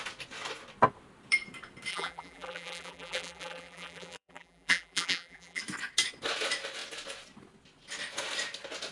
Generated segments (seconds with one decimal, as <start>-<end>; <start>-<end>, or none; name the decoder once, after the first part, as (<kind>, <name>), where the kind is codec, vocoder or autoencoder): 1.9-5.6 (vocoder, BigVGAN v2)

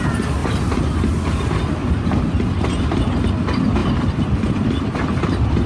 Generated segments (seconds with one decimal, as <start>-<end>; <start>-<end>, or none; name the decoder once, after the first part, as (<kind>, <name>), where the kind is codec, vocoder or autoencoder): 3.8-5.7 (vocoder, BigVGAN v2)

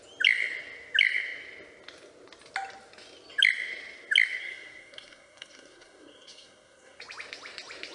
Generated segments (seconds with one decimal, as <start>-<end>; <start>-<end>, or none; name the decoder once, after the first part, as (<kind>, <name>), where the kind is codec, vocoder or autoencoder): 4.4-7.0 (codec, SNAC)

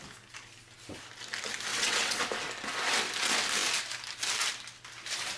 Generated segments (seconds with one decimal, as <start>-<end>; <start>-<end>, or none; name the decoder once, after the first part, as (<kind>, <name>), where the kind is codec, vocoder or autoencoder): 1.7-2.2 (vocoder, WaveNeXt)

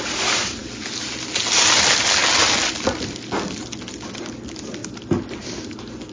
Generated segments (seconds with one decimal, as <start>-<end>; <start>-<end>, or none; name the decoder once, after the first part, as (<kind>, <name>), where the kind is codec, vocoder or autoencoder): none

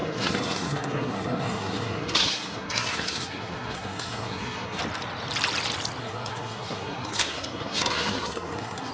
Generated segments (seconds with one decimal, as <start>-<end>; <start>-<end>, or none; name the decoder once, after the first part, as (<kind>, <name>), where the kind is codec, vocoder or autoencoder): 0.0-4.8 (codec, SNAC); 6.0-8.9